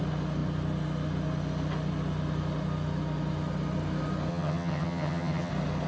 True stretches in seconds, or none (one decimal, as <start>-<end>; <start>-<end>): 0.0-4.3; 5.5-5.9